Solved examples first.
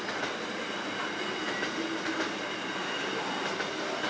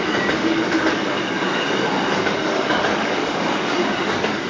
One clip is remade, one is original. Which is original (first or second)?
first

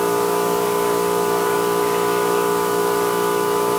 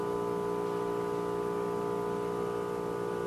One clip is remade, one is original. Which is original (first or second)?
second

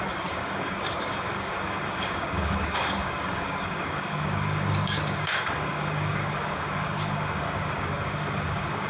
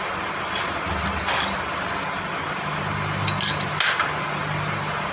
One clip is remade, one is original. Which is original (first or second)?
second